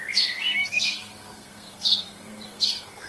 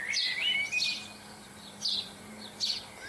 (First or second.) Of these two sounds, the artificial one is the first